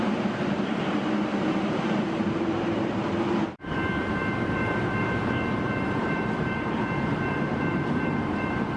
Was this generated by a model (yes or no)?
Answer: yes